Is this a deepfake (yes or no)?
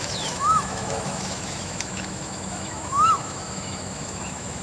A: yes